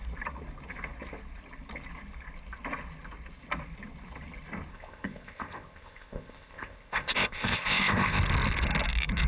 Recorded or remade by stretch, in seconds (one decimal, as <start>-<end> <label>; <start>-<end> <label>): 0.0-4.7 recorded; 4.7-8.2 remade; 8.2-9.3 recorded